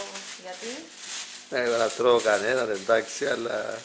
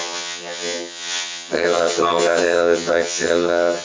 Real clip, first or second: first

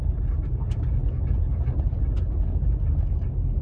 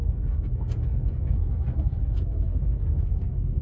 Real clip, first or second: first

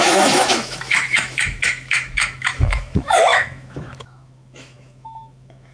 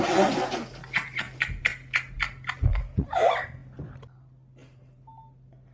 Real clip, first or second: second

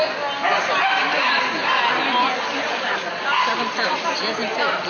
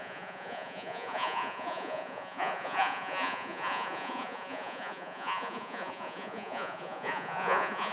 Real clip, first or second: first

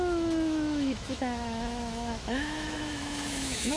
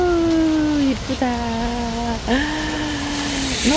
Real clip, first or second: second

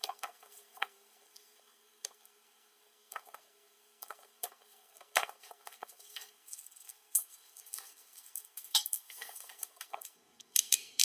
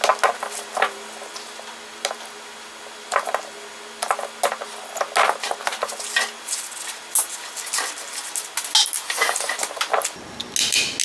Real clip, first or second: second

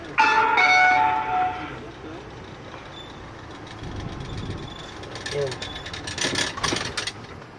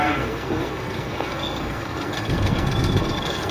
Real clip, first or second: first